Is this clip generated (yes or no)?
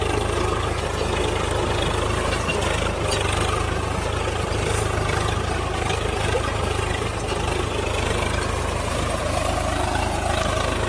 no